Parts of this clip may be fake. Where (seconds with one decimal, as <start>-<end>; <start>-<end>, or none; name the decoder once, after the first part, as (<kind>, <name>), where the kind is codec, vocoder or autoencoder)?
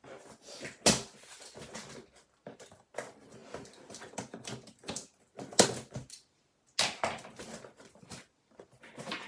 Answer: none